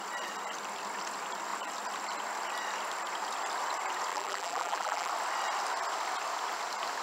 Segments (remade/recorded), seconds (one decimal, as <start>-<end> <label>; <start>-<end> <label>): 0.0-4.1 recorded; 4.1-5.1 remade; 5.1-7.0 recorded